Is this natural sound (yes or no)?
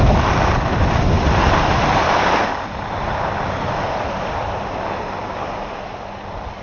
yes